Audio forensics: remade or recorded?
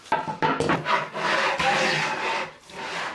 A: recorded